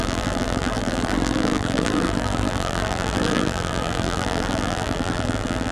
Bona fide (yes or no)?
no